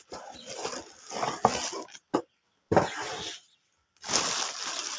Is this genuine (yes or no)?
yes